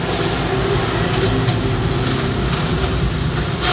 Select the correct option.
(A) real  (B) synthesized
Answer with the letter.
A